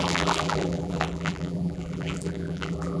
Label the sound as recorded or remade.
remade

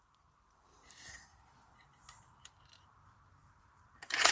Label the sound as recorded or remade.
remade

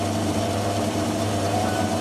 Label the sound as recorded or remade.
remade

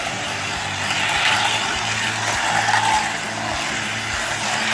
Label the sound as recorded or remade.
recorded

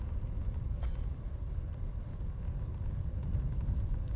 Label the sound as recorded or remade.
recorded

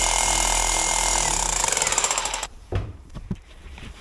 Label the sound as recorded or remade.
remade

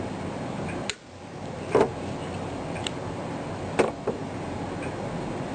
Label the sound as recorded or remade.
recorded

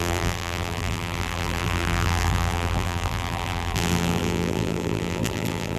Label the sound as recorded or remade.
remade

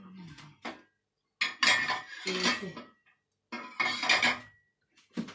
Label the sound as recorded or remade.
recorded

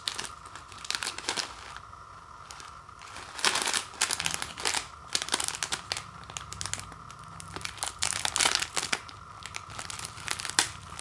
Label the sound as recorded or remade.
recorded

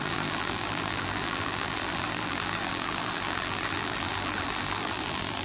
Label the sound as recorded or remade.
remade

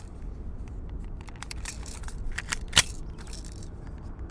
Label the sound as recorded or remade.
remade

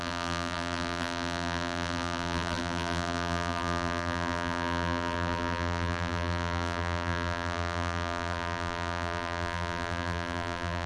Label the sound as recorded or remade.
remade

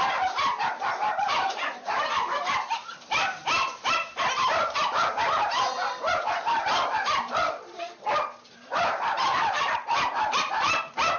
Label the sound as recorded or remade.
remade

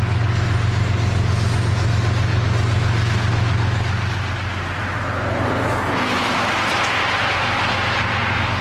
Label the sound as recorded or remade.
recorded